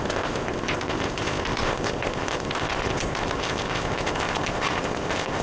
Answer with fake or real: fake